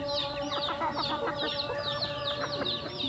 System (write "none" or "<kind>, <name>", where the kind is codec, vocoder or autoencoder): none